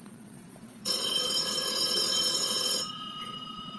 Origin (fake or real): fake